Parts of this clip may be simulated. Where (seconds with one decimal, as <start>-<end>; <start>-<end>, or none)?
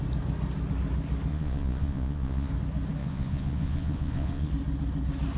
1.3-2.5; 3.0-4.5